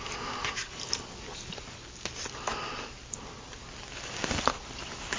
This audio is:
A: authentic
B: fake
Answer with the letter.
A